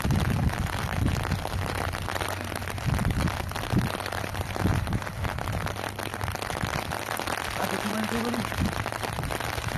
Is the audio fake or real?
real